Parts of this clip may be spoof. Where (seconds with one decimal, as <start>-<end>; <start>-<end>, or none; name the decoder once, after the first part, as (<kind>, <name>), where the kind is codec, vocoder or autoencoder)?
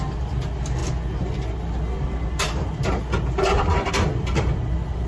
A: none